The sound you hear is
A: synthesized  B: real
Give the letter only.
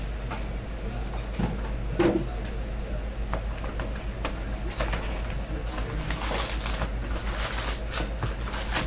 B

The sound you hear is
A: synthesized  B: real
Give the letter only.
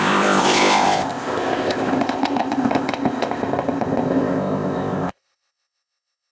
A